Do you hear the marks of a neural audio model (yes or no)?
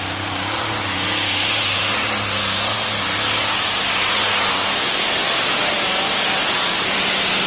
no